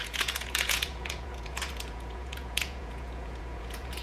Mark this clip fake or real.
fake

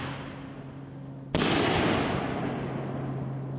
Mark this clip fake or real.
real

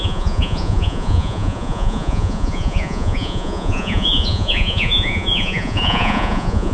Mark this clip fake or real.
fake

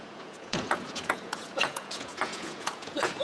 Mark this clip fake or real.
fake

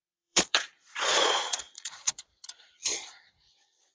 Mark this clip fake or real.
fake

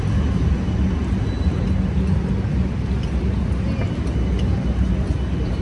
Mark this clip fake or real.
real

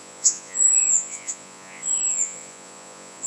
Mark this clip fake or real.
fake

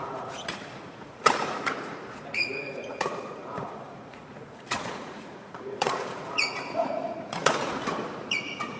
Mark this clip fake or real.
fake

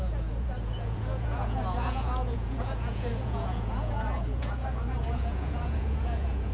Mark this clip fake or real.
fake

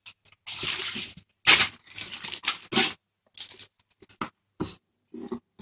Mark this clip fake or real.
real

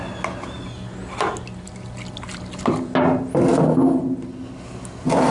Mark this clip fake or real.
real